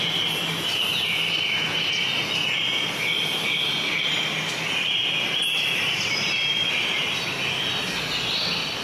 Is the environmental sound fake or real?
real